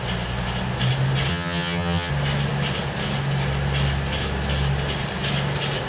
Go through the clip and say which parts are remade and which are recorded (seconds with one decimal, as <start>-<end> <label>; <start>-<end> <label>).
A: 0.0-1.3 recorded; 1.3-2.1 remade; 2.1-5.9 recorded